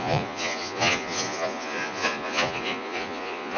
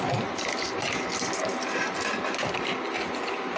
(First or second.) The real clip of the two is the second